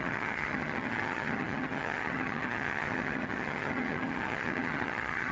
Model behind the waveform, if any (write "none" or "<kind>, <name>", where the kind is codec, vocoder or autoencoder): vocoder, HiFi-GAN